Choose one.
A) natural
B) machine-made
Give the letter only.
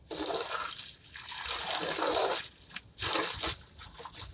A